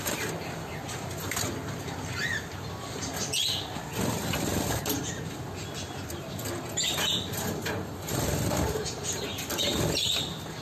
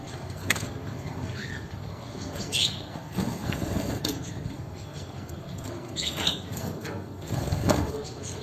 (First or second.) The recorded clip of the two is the first